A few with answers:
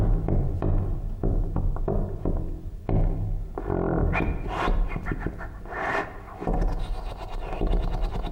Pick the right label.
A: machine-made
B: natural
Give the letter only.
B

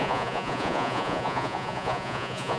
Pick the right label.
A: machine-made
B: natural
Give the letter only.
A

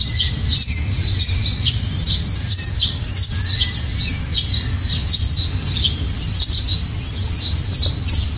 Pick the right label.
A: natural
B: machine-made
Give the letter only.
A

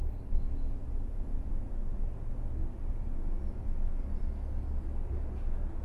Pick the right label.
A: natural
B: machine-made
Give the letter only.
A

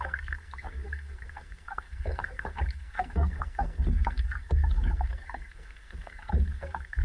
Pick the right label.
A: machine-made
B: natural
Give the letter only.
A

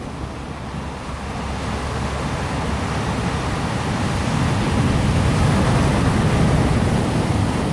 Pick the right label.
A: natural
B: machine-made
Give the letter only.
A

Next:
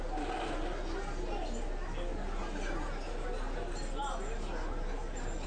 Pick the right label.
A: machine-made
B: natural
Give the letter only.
B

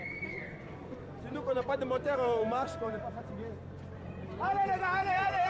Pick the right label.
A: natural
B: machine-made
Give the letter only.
B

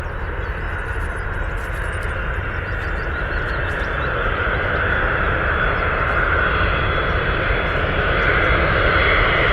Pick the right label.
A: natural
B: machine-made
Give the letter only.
A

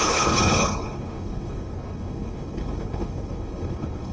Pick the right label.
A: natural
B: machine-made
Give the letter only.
B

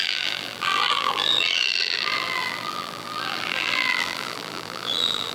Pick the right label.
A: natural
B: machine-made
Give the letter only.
B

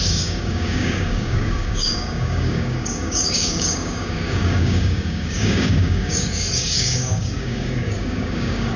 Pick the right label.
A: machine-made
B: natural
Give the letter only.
A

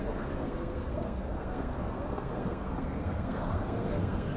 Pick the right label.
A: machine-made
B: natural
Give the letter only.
A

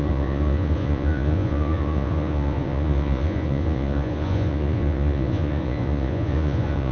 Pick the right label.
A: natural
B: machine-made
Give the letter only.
B